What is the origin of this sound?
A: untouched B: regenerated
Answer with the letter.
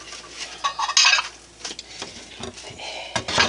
A